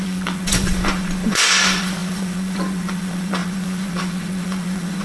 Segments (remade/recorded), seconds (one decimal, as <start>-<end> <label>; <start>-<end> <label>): 0.0-5.0 remade